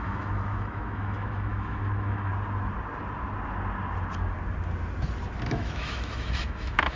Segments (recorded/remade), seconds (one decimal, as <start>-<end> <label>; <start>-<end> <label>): 0.0-2.3 remade; 2.3-5.5 recorded; 5.5-7.0 remade